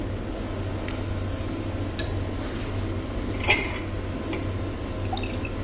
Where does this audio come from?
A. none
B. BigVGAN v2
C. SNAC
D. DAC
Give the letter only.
A